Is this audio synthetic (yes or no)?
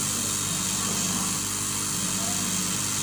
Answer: no